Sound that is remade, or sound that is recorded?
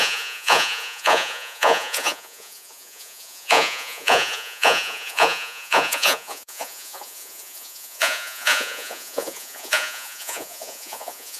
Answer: remade